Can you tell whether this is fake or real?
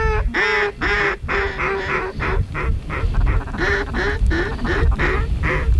real